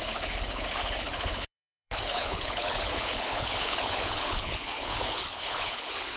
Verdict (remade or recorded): remade